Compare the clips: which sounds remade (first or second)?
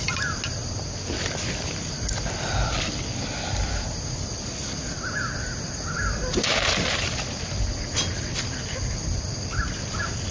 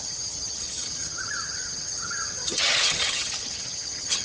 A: second